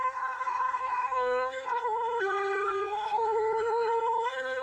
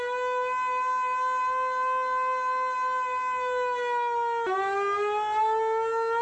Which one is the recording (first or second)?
second